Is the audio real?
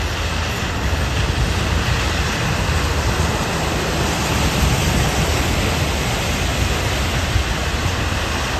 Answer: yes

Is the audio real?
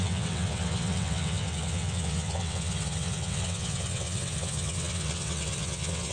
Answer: no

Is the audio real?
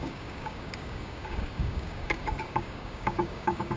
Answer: no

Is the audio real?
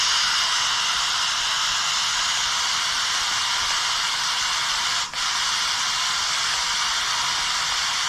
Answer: yes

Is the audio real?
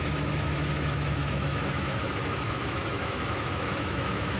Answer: no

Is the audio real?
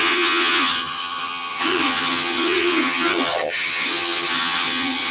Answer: no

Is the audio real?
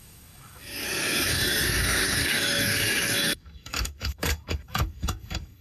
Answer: no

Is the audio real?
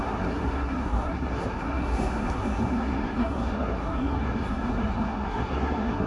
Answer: no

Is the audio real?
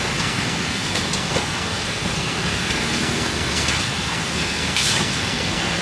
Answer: no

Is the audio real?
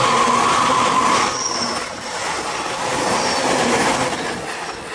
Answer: yes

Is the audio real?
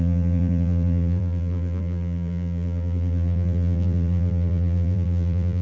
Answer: no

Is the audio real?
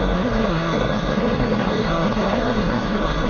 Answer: no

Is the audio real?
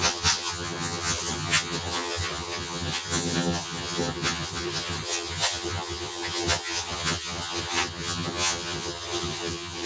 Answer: no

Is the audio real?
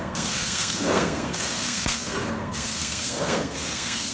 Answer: no